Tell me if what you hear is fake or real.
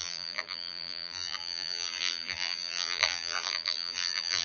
fake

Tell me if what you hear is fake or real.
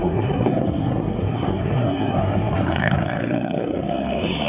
fake